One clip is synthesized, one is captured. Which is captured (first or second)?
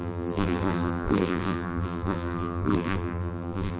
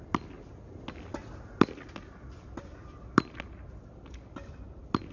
second